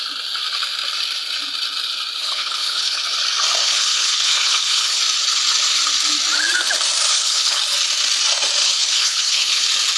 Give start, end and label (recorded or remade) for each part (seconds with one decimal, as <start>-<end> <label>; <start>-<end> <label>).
0.0-2.2 recorded; 2.2-3.0 remade; 3.0-3.6 recorded; 3.6-5.0 remade; 5.0-7.1 recorded; 7.1-7.6 remade; 7.6-8.6 recorded; 8.6-9.6 remade; 9.6-10.0 recorded